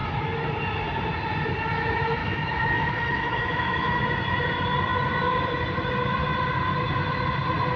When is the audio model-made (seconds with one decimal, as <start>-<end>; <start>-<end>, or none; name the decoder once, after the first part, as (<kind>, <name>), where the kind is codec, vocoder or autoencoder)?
2.2-4.0 (autoencoder, DAC-VAE)